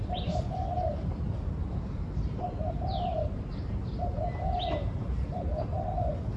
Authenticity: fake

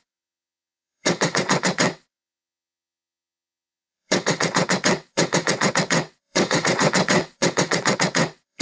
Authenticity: fake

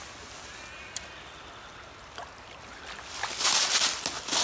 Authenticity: real